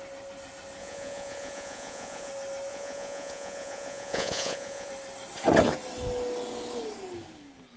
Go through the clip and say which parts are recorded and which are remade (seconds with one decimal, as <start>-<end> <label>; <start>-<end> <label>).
0.0-0.8 recorded; 0.8-2.3 remade; 2.3-2.7 recorded; 2.7-4.9 remade; 4.9-7.8 recorded